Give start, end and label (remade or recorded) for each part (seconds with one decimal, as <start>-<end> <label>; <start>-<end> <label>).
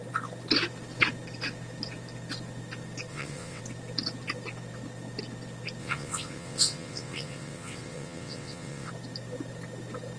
0.0-3.1 recorded; 3.1-3.6 remade; 3.6-5.8 recorded; 5.8-8.9 remade; 8.9-10.2 recorded